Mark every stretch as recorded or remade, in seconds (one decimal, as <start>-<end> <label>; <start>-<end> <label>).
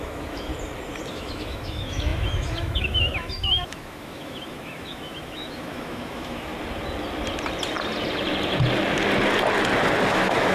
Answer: 0.0-0.5 remade; 0.5-1.1 recorded; 1.1-6.5 remade; 6.5-10.1 recorded; 10.1-10.5 remade